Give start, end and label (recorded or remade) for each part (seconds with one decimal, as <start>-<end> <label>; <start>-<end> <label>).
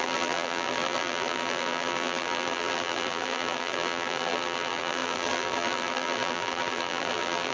0.0-7.5 remade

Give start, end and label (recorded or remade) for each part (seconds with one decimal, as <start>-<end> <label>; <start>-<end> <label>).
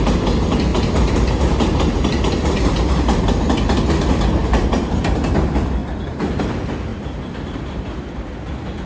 0.0-0.7 recorded; 0.7-3.4 remade; 3.4-4.4 recorded; 4.4-5.0 remade; 5.0-5.8 recorded; 5.8-6.4 remade; 6.4-6.9 recorded; 6.9-8.0 remade; 8.0-8.9 recorded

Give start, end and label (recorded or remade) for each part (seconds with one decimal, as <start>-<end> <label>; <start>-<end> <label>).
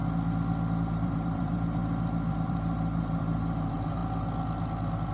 0.0-0.8 recorded; 0.8-1.8 remade; 1.8-2.3 recorded; 2.3-4.0 remade; 4.0-5.1 recorded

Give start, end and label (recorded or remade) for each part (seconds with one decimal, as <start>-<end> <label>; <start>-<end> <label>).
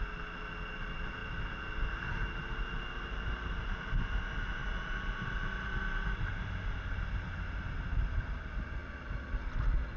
0.0-1.2 recorded; 1.2-1.9 remade; 1.9-10.0 recorded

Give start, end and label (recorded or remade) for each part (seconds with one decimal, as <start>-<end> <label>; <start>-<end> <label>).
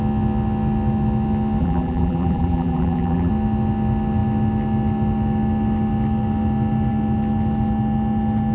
0.0-1.6 recorded; 1.6-3.3 remade; 3.3-8.5 recorded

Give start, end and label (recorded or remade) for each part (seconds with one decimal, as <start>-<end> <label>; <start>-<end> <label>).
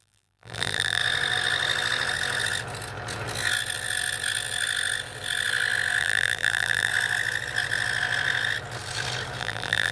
0.0-1.0 remade; 1.0-6.0 recorded; 6.0-6.9 remade; 6.9-9.4 recorded; 9.4-9.9 remade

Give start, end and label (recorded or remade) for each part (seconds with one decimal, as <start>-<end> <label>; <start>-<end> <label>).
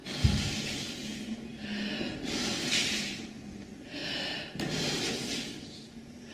0.0-4.0 recorded; 4.0-5.1 remade; 5.1-6.3 recorded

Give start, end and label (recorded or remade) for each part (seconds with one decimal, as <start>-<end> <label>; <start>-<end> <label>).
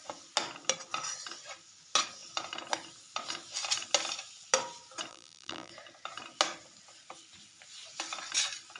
0.0-5.1 recorded; 5.1-5.7 remade; 5.7-8.8 recorded